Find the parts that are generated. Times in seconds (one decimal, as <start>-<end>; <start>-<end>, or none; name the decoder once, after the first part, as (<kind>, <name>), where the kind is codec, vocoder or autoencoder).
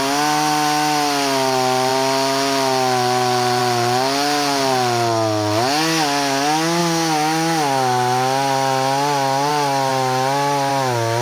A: none